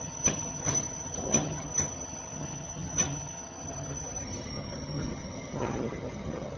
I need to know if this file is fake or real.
fake